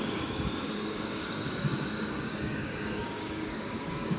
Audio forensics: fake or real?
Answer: fake